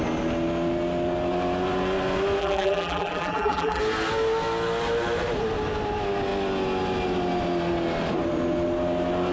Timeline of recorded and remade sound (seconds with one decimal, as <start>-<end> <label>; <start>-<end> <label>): 0.0-2.4 recorded; 2.4-3.8 remade; 3.8-9.3 recorded